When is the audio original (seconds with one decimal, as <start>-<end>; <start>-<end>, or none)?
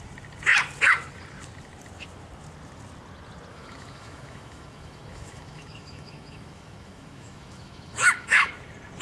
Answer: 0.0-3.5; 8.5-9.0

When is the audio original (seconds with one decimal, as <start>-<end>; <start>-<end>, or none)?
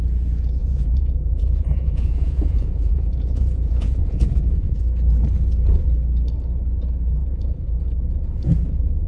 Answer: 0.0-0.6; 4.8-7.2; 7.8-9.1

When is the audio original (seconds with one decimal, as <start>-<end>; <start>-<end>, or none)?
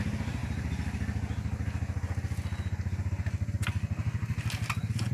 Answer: 0.0-5.1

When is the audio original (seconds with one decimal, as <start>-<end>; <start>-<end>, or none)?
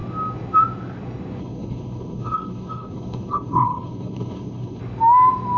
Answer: 0.0-1.4; 4.8-5.6